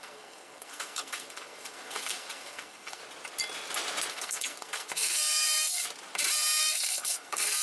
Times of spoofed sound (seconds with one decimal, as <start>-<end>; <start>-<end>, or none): 0.0-3.0; 4.1-5.8; 6.6-7.6